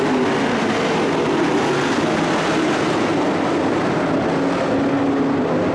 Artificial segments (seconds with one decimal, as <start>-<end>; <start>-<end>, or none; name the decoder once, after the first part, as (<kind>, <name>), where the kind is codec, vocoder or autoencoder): none